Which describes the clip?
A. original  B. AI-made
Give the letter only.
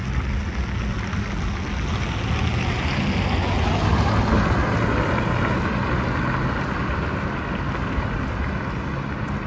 A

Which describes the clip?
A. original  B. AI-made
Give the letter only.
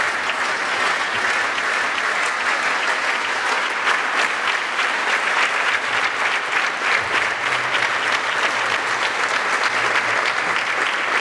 A